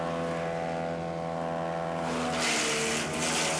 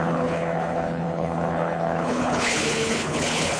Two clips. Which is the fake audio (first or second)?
second